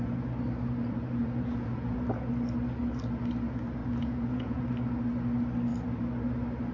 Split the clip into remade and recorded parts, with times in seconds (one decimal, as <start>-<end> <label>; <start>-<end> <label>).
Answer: 0.0-1.2 recorded; 1.2-2.3 remade; 2.3-3.8 recorded; 3.8-4.6 remade; 4.6-6.7 recorded

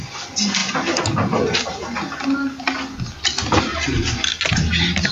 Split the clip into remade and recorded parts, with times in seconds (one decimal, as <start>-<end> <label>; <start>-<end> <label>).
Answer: 0.0-3.7 recorded; 3.7-5.1 remade

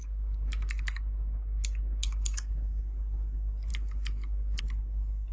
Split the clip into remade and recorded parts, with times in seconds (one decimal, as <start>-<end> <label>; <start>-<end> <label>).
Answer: 0.0-2.8 remade; 2.8-3.7 recorded; 3.7-4.6 remade; 4.6-5.3 recorded

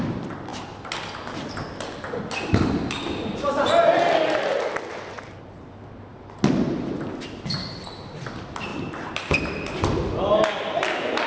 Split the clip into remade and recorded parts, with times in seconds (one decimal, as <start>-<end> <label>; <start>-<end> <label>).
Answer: 0.0-8.7 recorded; 8.7-10.2 remade; 10.2-11.3 recorded

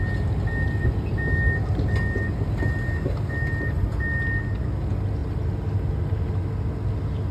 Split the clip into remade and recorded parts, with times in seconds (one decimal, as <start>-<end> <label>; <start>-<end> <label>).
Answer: 0.0-7.3 recorded

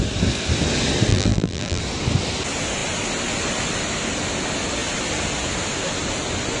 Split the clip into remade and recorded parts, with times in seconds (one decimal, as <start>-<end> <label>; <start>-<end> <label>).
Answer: 0.0-1.1 recorded; 1.1-1.8 remade; 1.8-6.6 recorded

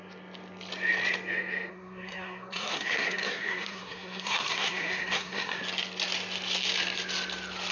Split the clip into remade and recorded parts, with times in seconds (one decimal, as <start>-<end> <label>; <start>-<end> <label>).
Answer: 0.0-1.7 recorded; 1.7-5.6 remade; 5.6-7.7 recorded

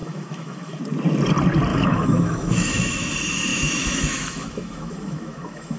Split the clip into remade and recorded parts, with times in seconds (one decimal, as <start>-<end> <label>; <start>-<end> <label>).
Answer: 0.0-0.8 remade; 0.8-1.7 recorded; 1.7-3.1 remade; 3.1-3.5 recorded; 3.5-5.8 remade